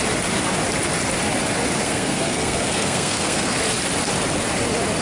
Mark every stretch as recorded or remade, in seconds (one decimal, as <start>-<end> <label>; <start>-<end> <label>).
0.0-1.8 recorded; 1.8-3.6 remade; 3.6-5.0 recorded